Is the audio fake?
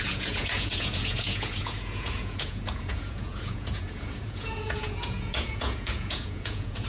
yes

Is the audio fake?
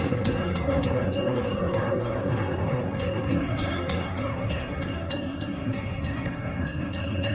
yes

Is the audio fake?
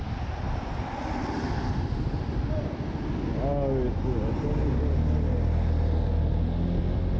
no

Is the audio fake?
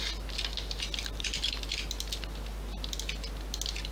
no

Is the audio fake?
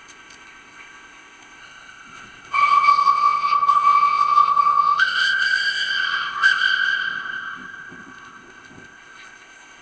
yes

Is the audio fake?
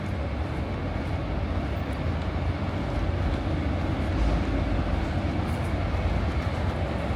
no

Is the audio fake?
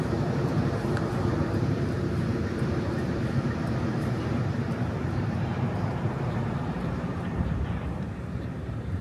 yes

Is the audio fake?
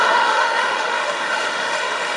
yes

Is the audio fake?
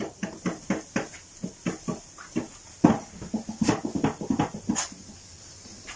no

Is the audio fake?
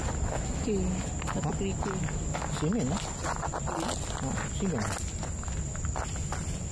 no